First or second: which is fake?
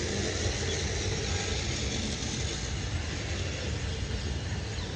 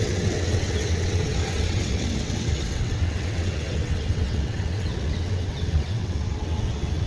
second